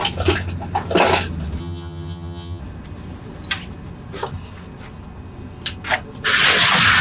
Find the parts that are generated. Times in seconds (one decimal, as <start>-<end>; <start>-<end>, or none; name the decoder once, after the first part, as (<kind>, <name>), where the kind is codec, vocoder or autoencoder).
1.6-2.6 (vocoder, HiFi-GAN)